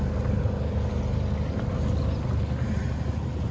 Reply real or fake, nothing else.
real